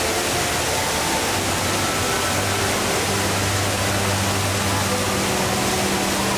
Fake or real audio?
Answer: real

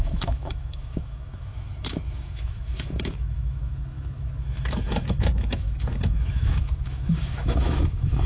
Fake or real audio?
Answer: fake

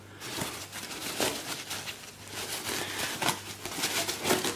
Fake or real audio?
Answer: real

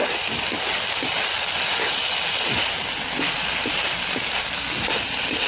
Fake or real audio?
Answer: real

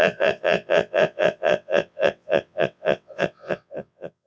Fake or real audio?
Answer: fake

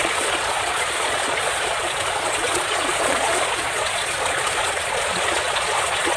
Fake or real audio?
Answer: fake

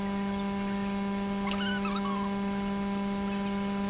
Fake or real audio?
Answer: real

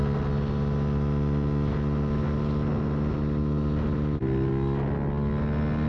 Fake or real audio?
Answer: real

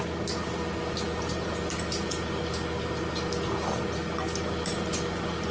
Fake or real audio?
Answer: real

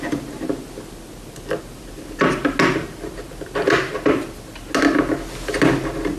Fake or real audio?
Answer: real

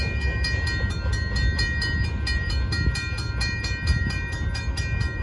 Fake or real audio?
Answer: real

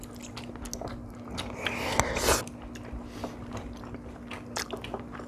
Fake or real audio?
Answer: real